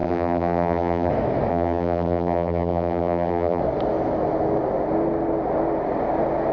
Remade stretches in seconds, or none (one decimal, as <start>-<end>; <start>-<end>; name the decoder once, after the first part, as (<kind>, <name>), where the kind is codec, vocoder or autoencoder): 0.0-1.1 (vocoder, BigVGAN v2); 1.5-3.6